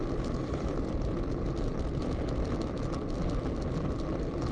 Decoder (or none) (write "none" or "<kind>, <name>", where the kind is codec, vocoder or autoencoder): none